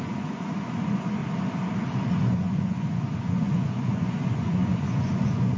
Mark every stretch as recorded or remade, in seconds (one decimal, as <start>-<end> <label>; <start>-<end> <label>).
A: 0.0-1.2 remade; 1.2-1.8 recorded; 1.8-5.6 remade